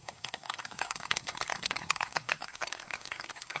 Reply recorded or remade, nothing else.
remade